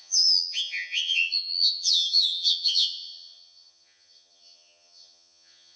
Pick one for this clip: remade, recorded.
remade